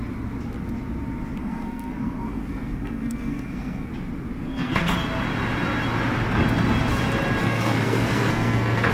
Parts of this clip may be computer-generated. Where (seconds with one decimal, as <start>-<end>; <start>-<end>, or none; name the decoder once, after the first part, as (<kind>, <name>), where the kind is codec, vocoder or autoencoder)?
1.4-3.9 (codec, SNAC); 4.4-5.0; 7.4-8.9